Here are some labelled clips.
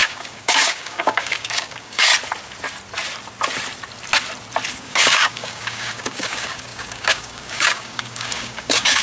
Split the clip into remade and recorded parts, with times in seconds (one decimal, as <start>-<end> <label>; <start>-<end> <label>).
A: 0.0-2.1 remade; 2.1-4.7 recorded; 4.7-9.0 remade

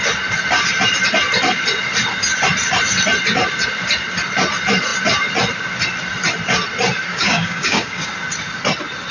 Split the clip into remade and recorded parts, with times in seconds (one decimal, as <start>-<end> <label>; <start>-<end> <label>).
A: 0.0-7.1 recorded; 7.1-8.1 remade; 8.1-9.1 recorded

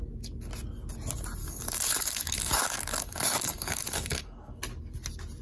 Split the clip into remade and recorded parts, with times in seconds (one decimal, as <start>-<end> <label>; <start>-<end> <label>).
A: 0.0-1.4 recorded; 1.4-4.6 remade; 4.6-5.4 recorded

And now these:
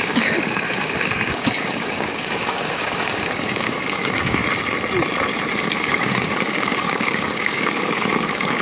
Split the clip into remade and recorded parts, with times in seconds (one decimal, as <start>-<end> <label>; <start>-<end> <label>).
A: 0.0-4.4 remade; 4.4-5.6 recorded; 5.6-8.6 remade